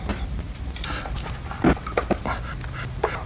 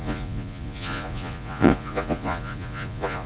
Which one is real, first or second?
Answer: first